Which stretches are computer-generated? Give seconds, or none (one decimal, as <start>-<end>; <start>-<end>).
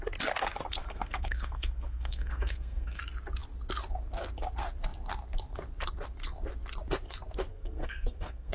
0.8-3.0; 7.5-8.5